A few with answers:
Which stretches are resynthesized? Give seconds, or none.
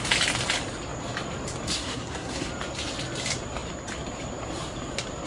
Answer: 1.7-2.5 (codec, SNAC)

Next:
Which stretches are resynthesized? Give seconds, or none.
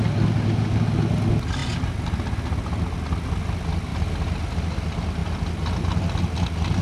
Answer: none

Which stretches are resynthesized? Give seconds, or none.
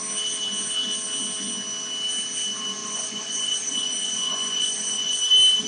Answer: 2.8-5.2 (vocoder, Vocos)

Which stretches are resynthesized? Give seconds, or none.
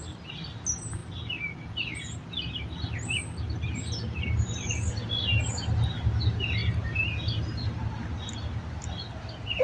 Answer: none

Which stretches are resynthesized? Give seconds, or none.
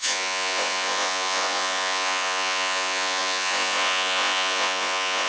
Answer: 0.0-5.3 (vocoder, Vocos)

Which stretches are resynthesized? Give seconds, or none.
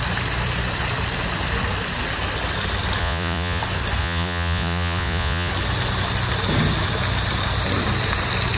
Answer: 3.0-3.6 (vocoder, Vocos); 4.0-5.5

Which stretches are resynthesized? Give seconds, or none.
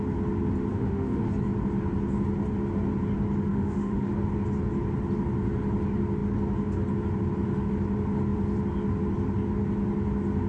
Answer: 0.7-1.3 (autoencoder, DAC-VAE); 3.5-4.1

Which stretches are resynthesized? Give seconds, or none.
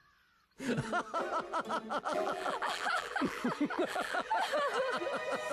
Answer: 2.0-3.4 (vocoder, BigVGAN v2); 3.9-4.3